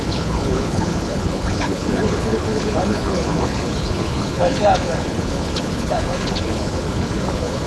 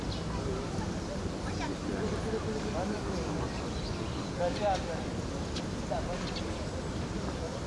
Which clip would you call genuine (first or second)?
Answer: second